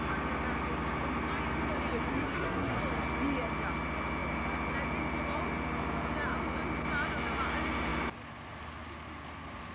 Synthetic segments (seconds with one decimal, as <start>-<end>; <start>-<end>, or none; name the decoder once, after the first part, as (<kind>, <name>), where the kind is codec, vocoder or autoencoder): 2.1-2.8 (codec, SNAC)